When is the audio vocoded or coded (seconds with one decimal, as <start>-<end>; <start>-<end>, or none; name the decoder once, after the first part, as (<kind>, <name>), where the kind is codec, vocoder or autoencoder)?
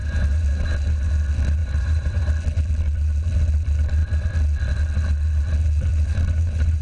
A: 0.0-1.1 (vocoder, BigVGAN v2); 1.6-2.2; 5.9-6.8